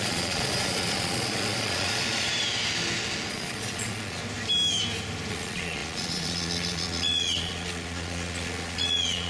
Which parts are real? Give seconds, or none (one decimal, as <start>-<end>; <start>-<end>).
2.3-3.3; 4.2-5.3